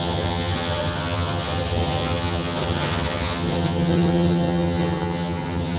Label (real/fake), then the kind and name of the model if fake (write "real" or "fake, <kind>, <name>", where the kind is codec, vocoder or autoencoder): fake, vocoder, HiFi-GAN